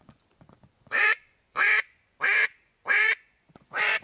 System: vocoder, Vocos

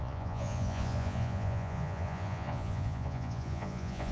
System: vocoder, Vocos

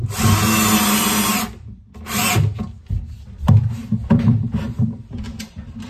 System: none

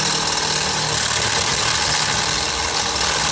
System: none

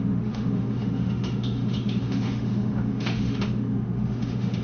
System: autoencoder, DAC-VAE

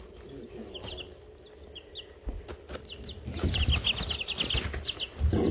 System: none